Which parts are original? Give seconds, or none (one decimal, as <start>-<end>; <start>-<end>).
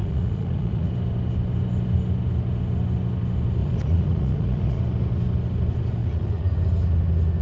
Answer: 0.9-3.6; 4.8-6.0; 6.6-7.4